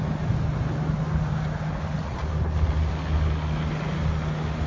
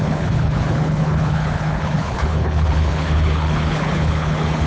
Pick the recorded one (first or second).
first